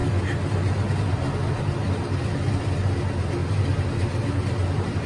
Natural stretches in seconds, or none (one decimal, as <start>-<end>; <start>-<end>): 0.0-5.1